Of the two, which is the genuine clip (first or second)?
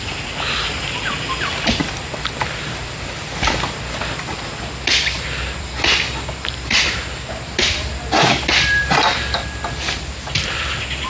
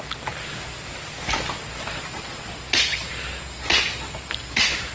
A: second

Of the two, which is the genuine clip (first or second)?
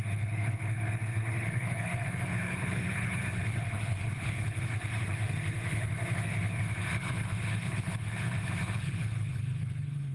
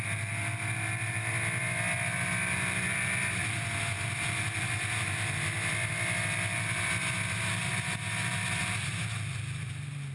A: second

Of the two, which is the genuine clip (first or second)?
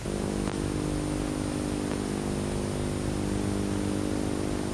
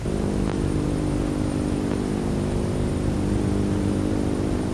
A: first